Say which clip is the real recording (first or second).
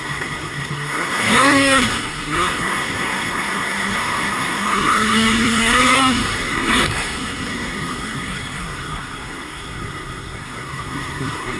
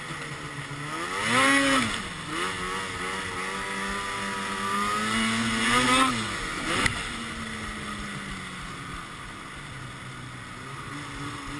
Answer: second